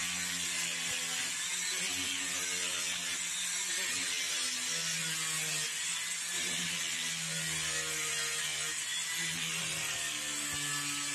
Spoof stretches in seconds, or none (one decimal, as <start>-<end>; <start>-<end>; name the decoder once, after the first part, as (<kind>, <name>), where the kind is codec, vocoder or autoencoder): none